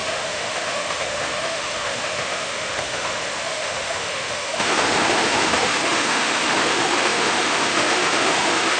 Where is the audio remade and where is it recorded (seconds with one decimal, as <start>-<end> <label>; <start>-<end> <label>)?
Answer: 0.0-8.8 remade